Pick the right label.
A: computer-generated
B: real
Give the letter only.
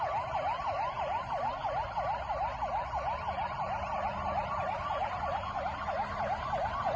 B